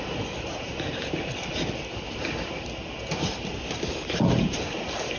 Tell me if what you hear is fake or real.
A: real